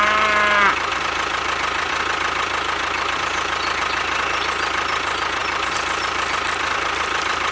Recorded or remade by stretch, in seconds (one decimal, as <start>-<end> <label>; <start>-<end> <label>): 0.0-5.4 remade; 5.4-6.0 recorded; 6.0-7.5 remade